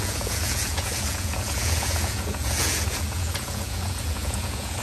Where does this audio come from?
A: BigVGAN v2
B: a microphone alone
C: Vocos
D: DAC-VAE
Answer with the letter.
C